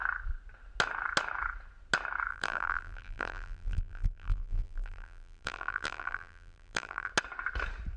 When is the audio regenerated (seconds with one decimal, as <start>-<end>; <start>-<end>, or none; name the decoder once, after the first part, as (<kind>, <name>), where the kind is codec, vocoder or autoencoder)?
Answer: 2.3-7.1 (vocoder, BigVGAN v2)